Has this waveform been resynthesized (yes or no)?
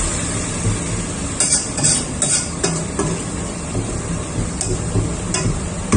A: no